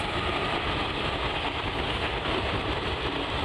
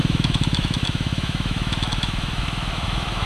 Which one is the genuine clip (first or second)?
first